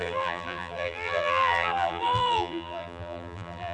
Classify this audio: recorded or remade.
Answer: remade